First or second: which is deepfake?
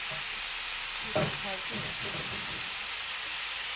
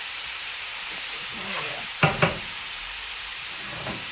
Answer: second